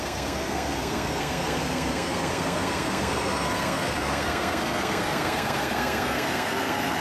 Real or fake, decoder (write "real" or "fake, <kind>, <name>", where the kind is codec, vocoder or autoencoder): fake, codec, SNAC